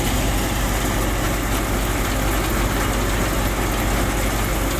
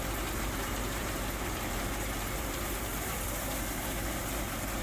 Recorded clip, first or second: first